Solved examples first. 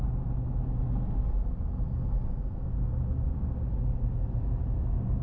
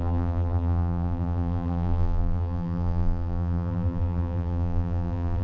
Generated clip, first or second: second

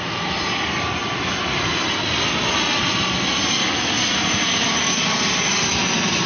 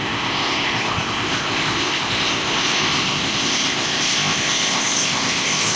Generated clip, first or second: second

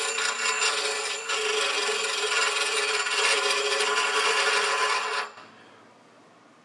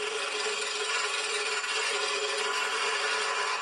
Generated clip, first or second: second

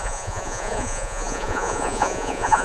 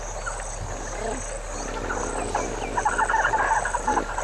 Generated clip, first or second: first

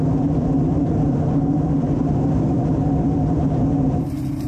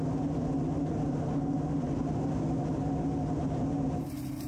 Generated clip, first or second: first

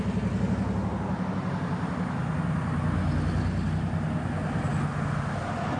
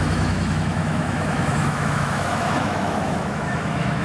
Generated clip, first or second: second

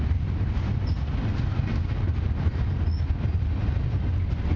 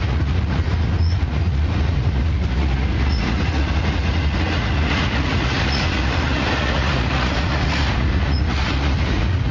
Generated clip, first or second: second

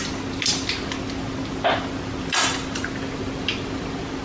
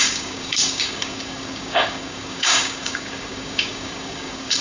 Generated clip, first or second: second